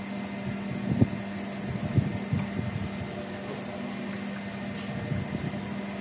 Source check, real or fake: real